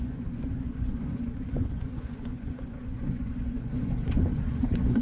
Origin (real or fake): fake